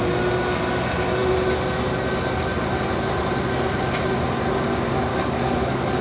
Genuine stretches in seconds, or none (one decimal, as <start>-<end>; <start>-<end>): 0.0-5.1